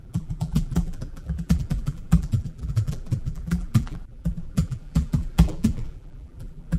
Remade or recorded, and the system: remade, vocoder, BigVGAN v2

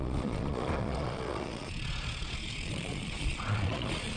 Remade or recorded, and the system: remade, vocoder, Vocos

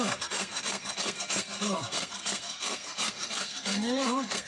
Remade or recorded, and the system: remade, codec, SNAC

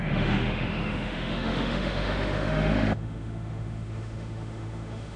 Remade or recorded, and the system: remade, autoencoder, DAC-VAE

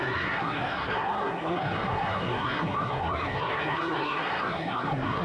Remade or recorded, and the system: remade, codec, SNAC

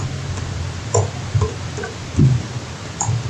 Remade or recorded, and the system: recorded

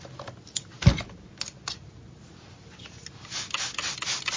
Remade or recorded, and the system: recorded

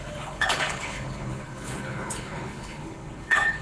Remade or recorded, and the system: remade, codec, HILCodec